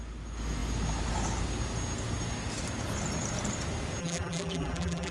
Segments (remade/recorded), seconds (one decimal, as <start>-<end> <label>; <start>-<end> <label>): 0.0-4.0 recorded; 4.0-5.1 remade